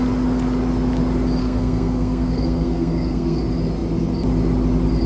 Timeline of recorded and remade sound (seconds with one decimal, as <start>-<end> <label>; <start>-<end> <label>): 0.0-1.4 recorded; 1.4-3.4 remade; 3.4-5.1 recorded